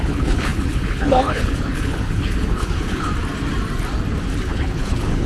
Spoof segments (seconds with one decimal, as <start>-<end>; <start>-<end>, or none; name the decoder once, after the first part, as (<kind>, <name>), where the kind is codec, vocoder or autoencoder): 0.0-3.1 (codec, HILCodec); 4.4-5.3